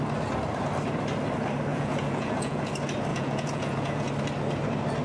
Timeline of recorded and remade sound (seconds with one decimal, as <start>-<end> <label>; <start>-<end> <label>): 0.0-1.7 recorded; 1.7-2.7 remade; 2.7-3.1 recorded; 3.1-4.1 remade; 4.1-5.0 recorded